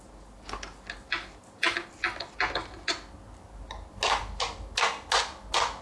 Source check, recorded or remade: recorded